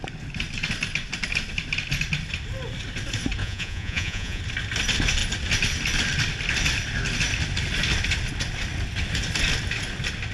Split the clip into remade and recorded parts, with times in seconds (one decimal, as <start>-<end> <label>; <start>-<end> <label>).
0.0-3.4 recorded; 3.4-4.4 remade; 4.4-10.3 recorded

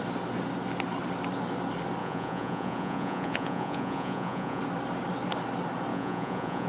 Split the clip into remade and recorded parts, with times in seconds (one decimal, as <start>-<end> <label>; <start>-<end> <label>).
0.0-2.0 recorded; 2.0-4.6 remade; 4.6-5.9 recorded; 5.9-6.7 remade

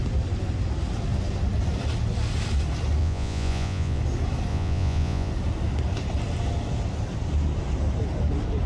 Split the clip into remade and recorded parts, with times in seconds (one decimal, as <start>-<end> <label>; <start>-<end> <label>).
0.0-3.0 recorded; 3.0-4.0 remade; 4.0-4.5 recorded; 4.5-5.3 remade; 5.3-8.7 recorded

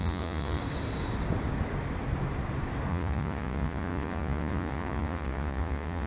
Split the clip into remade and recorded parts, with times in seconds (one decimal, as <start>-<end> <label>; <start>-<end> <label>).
0.0-0.6 remade; 0.6-2.9 recorded; 2.9-6.1 remade

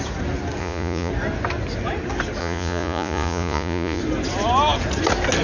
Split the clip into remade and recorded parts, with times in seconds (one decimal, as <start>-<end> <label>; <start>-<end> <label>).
0.0-0.6 recorded; 0.6-1.1 remade; 1.1-2.4 recorded; 2.4-4.0 remade; 4.0-5.4 recorded

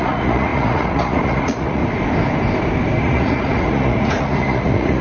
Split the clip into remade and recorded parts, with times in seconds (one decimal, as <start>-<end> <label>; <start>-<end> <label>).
0.0-1.8 remade; 1.8-3.0 recorded; 3.0-5.0 remade

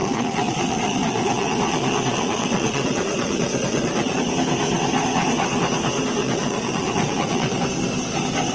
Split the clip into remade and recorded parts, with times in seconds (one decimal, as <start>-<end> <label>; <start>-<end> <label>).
0.0-4.2 remade; 4.2-6.2 recorded; 6.2-7.6 remade; 7.6-8.5 recorded